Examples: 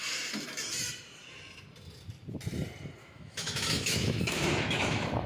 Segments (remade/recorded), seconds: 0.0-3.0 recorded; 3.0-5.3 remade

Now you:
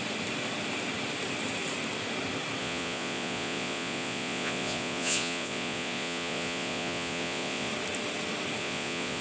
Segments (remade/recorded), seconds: 0.0-2.6 recorded; 2.6-7.7 remade; 7.7-8.6 recorded; 8.6-9.2 remade

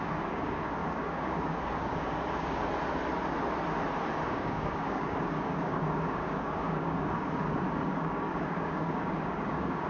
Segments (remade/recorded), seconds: 0.0-2.6 remade; 2.6-4.1 recorded; 4.1-9.9 remade